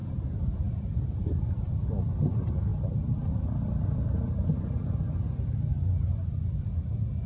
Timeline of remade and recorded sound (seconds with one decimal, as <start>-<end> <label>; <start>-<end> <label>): 0.0-1.6 remade; 1.6-5.7 recorded; 5.7-6.4 remade; 6.4-7.3 recorded